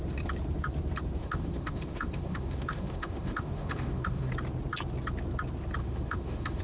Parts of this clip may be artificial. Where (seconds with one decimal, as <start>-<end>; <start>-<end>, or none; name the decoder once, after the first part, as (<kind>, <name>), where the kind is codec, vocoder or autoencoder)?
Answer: 1.2-4.3 (autoencoder, DAC-VAE); 5.8-6.6